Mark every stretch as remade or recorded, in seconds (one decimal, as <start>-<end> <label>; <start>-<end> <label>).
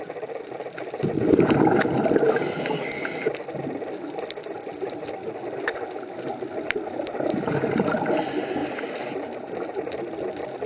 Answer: 0.0-10.7 recorded